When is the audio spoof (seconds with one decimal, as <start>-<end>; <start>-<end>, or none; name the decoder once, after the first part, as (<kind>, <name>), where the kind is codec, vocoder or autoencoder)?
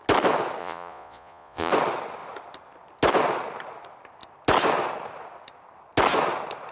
0.6-1.7 (vocoder, Vocos)